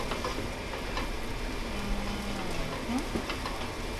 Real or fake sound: real